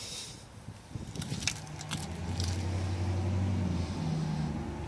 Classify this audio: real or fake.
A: real